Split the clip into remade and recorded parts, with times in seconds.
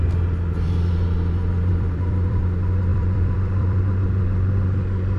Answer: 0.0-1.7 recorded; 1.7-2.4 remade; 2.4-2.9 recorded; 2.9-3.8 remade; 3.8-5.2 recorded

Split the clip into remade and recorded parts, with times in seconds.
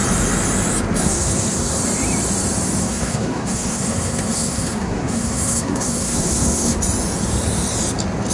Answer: 0.0-1.0 recorded; 1.0-1.8 remade; 1.8-2.8 recorded; 2.8-6.8 remade; 6.8-8.3 recorded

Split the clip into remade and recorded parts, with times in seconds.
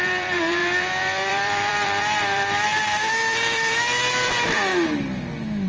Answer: 0.0-4.7 remade; 4.7-5.7 recorded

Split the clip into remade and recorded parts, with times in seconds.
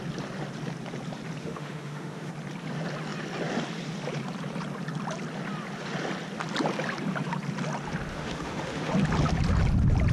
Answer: 0.0-1.4 recorded; 1.4-2.3 remade; 2.3-8.1 recorded; 8.1-8.9 remade; 8.9-10.1 recorded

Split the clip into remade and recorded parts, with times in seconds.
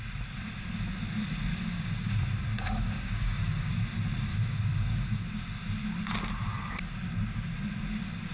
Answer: 0.0-1.5 recorded; 1.5-3.7 remade; 3.7-4.3 recorded; 4.3-5.3 remade; 5.3-8.3 recorded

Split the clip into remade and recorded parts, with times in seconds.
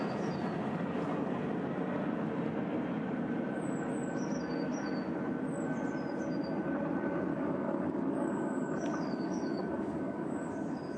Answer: 0.0-7.3 recorded; 7.3-11.0 remade